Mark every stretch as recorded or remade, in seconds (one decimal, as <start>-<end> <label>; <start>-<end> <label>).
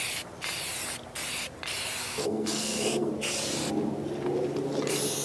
0.0-2.0 recorded; 2.0-3.1 remade; 3.1-5.2 recorded